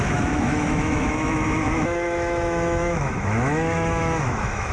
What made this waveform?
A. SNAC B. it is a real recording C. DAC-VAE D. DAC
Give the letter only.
C